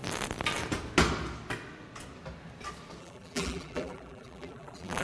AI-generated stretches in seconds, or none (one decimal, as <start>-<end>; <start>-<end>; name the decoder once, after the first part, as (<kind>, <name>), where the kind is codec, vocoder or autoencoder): 3.0-5.0 (vocoder, BigVGAN v2)